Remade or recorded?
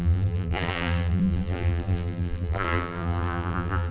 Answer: remade